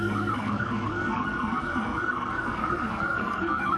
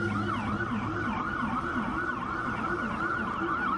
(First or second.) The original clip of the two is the second